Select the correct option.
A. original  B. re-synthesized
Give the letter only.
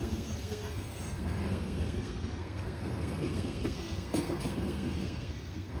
B